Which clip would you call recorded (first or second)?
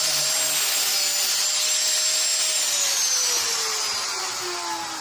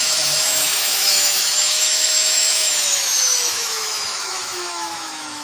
first